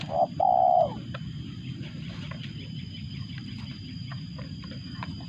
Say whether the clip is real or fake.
fake